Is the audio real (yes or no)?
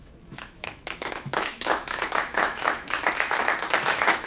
no